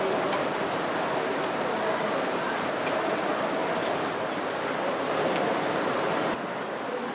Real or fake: real